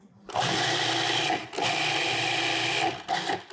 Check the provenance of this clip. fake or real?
real